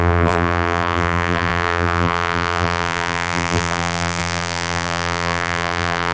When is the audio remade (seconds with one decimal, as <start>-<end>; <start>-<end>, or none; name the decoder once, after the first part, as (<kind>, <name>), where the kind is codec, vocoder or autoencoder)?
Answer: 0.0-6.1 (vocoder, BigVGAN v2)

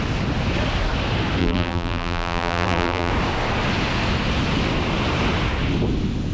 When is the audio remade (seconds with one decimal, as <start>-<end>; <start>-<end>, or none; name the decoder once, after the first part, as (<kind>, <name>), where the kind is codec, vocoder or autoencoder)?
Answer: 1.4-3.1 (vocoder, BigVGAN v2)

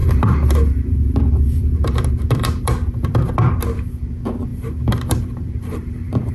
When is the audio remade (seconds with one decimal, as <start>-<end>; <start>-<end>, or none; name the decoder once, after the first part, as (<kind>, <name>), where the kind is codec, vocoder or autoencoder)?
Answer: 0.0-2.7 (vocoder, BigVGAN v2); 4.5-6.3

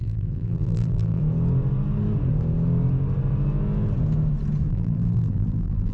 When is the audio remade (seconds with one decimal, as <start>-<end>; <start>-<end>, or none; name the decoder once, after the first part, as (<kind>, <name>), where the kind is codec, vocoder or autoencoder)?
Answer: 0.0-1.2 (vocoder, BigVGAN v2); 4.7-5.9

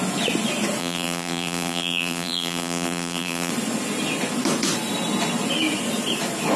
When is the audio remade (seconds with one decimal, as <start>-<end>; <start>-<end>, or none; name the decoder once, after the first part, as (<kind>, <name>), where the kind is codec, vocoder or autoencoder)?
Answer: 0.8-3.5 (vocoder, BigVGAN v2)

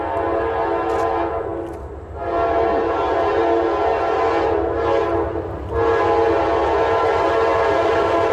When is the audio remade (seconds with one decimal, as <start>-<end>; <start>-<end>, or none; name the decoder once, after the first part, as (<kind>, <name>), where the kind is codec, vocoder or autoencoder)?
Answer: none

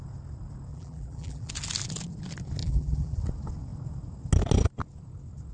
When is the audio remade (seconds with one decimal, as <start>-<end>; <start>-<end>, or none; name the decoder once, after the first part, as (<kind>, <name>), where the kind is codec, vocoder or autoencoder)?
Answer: 0.7-1.5 (vocoder, BigVGAN v2); 2.6-3.2

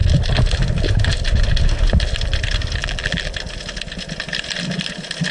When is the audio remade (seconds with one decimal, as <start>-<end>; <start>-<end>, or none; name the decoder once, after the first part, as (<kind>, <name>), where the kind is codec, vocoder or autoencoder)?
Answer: 2.8-3.3 (vocoder, BigVGAN v2)